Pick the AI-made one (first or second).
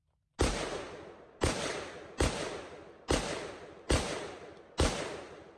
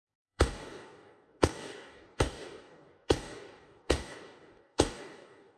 second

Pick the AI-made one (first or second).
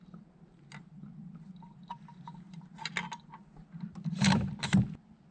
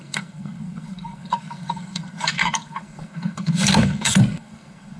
second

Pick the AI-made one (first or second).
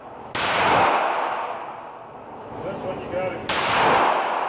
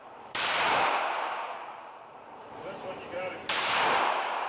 second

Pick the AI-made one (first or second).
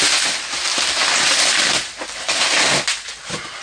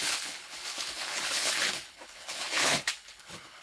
second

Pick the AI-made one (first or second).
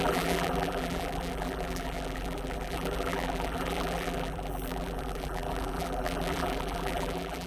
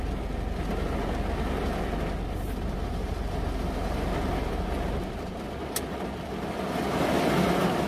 first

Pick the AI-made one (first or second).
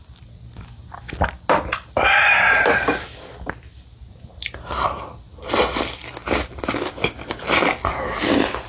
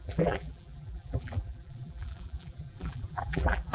second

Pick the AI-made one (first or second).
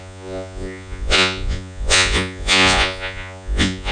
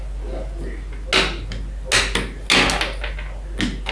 first